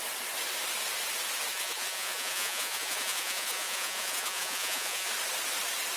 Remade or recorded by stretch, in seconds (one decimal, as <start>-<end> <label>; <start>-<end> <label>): 0.0-1.5 recorded; 1.5-5.1 remade; 5.1-6.0 recorded